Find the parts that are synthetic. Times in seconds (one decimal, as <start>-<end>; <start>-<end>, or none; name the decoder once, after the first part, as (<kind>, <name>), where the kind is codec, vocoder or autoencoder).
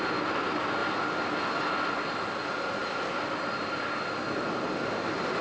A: none